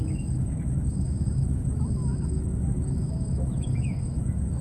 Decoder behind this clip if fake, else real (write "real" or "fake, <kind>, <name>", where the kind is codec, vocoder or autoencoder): fake, autoencoder, DAC-VAE